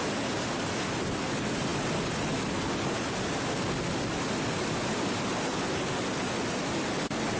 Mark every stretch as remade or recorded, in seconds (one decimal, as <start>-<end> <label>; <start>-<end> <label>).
0.0-7.4 recorded